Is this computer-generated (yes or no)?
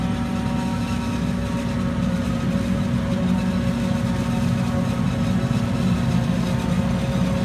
no